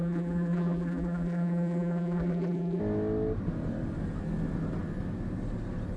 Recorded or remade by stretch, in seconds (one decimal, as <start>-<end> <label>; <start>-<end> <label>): 0.0-2.8 remade; 2.8-6.0 recorded